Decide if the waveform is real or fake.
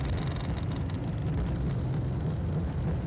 real